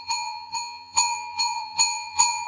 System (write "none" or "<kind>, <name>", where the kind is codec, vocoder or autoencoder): vocoder, HiFi-GAN